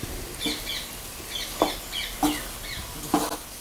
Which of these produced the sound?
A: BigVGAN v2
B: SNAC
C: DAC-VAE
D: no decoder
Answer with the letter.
D